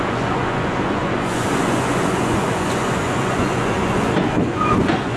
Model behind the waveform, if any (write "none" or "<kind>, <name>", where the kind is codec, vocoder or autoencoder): vocoder, Vocos